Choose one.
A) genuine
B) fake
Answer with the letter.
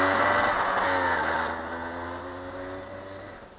A